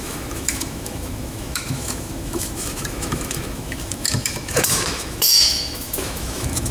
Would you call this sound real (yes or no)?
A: no